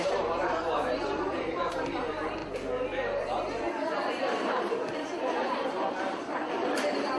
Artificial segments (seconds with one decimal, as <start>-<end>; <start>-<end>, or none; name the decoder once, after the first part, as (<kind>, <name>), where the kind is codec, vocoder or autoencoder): 0.0-2.4 (vocoder, BigVGAN v2); 6.5-7.2